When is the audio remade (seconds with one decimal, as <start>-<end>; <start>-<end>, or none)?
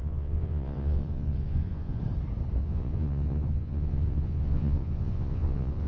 0.0-2.0; 2.6-5.9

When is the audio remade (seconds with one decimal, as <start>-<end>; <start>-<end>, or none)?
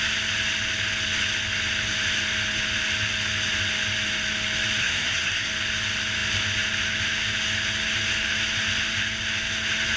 4.8-5.5